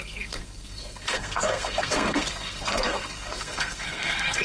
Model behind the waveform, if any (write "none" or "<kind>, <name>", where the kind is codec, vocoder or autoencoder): codec, SNAC